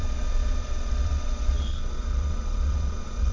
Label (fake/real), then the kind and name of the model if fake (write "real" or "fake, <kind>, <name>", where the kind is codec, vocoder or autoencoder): fake, vocoder, Vocos